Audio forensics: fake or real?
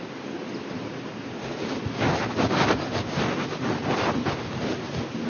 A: real